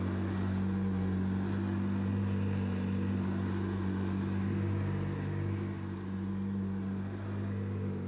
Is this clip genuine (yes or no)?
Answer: yes